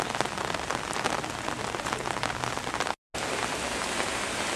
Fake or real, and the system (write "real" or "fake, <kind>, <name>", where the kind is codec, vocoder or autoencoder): real